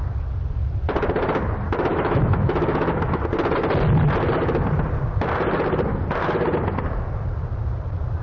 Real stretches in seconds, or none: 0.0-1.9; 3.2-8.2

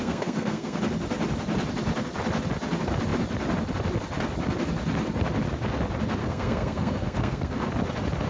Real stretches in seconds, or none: 0.8-6.2; 7.7-8.3

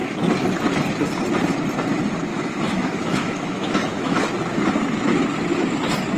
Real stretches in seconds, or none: 0.0-2.3; 4.2-6.2